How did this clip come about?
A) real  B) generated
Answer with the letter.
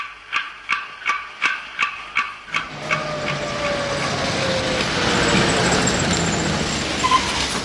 A